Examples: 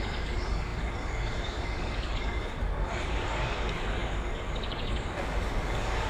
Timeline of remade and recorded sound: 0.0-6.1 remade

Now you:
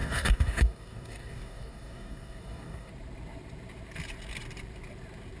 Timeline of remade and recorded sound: 0.0-2.9 remade; 2.9-5.4 recorded

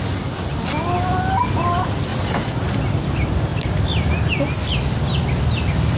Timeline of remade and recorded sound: 0.0-6.0 recorded

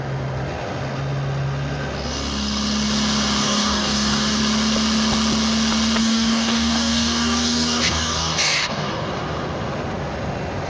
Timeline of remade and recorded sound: 0.0-3.4 recorded; 3.4-4.4 remade; 4.4-6.0 recorded; 6.0-9.1 remade; 9.1-10.7 recorded

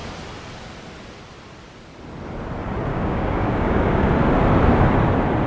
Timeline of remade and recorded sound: 0.0-2.9 recorded; 2.9-4.1 remade; 4.1-5.5 recorded